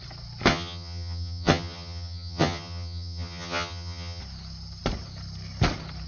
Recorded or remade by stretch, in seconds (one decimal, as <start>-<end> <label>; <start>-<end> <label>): 0.0-0.5 recorded; 0.5-4.2 remade; 4.2-6.1 recorded